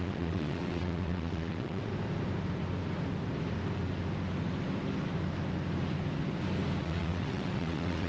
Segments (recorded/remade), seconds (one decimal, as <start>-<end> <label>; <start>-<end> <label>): 0.0-1.9 remade; 1.9-6.8 recorded; 6.8-8.1 remade